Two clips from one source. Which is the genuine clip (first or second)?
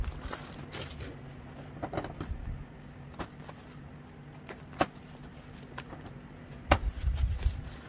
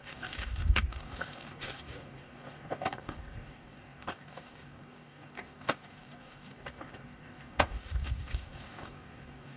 first